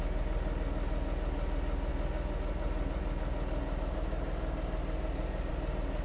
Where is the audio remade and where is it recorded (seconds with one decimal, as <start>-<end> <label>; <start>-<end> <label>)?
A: 0.0-6.0 recorded